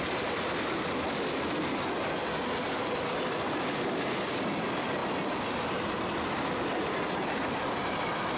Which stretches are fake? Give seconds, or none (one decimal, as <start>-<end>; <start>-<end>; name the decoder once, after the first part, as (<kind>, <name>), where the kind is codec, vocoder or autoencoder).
none